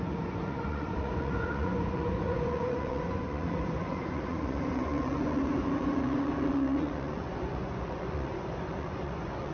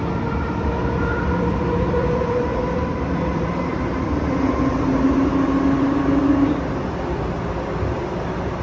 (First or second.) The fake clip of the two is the first